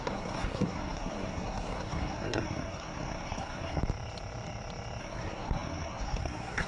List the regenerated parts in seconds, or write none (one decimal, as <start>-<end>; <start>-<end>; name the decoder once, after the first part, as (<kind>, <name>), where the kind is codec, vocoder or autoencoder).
0.0-3.8 (codec, SNAC); 5.0-6.7